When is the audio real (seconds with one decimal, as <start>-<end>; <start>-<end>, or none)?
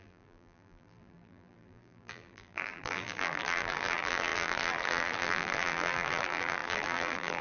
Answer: none